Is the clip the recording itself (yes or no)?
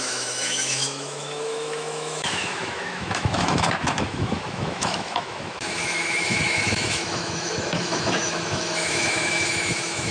no